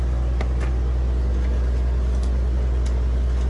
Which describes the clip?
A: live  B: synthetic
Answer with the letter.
A